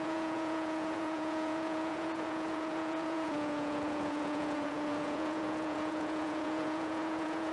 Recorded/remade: remade